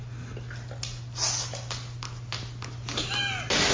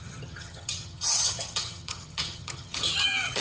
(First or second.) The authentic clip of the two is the first